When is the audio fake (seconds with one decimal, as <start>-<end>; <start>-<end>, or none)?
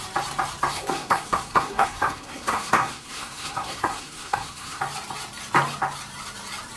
0.7-4.8